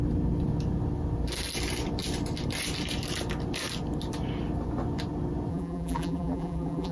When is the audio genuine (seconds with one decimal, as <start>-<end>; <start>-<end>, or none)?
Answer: 0.0-5.5